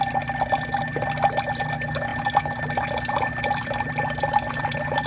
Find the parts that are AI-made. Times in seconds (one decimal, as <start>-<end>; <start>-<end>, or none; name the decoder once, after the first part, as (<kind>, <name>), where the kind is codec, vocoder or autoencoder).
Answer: none

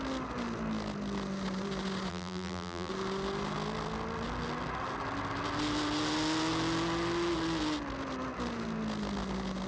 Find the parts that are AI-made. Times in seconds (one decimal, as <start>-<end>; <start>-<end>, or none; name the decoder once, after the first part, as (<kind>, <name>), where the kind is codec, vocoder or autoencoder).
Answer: 2.1-2.9 (vocoder, BigVGAN v2)

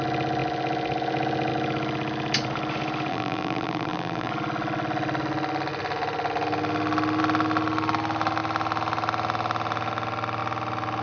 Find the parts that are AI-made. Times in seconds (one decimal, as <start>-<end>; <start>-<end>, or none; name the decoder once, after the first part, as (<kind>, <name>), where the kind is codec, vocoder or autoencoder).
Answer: 3.1-4.3 (vocoder, BigVGAN v2)

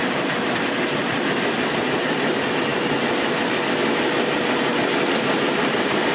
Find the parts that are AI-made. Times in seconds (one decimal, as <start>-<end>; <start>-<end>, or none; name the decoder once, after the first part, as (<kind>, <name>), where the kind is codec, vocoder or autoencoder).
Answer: 0.0-2.7 (vocoder, BigVGAN v2); 4.8-6.1

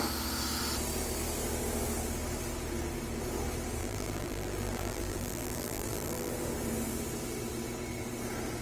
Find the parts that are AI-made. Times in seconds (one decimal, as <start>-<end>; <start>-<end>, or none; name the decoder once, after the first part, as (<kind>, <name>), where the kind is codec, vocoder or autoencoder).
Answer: 3.8-6.3 (vocoder, BigVGAN v2)

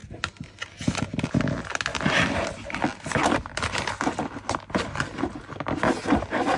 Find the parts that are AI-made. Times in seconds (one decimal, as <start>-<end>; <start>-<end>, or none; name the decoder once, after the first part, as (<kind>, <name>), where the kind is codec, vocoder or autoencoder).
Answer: none

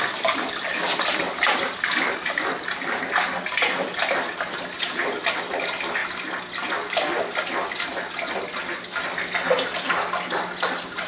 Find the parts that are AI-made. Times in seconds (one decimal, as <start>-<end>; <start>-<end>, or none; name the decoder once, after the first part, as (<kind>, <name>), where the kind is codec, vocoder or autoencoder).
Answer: 0.7-1.7 (vocoder, BigVGAN v2); 6.0-8.4

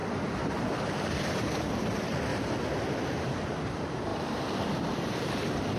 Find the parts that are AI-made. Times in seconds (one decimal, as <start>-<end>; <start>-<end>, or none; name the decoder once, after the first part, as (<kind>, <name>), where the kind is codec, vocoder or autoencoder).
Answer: 0.0-2.3 (vocoder, BigVGAN v2); 3.2-5.8